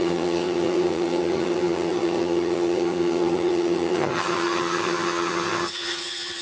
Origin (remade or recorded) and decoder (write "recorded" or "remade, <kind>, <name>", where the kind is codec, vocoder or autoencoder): remade, vocoder, HiFi-GAN